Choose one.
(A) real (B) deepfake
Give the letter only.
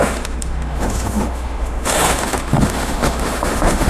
B